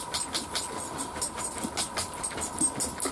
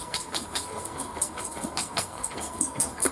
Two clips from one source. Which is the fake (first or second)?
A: second